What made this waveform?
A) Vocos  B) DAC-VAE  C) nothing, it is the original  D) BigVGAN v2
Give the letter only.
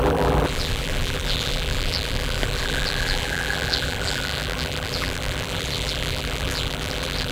D